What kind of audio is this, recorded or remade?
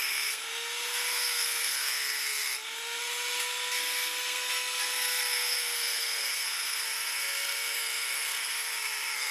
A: remade